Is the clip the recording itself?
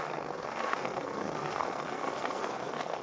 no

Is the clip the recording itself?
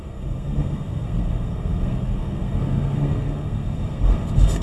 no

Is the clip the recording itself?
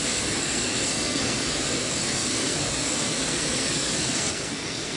no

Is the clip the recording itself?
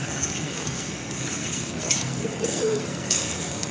no